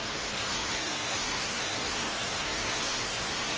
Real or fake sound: fake